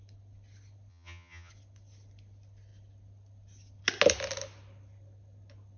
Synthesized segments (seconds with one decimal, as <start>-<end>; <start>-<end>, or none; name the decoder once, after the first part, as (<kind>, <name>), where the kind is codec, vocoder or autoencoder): 0.9-1.5 (vocoder, HiFi-GAN)